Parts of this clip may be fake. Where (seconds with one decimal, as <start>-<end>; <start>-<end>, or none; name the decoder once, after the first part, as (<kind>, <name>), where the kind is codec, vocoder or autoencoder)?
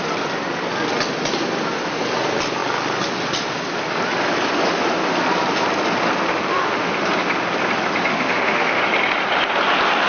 6.3-6.9 (autoencoder, DAC-VAE); 8.1-8.8